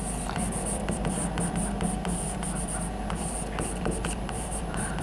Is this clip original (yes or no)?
no